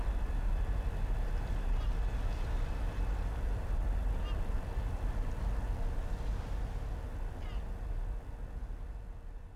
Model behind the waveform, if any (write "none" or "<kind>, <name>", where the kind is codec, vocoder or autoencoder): none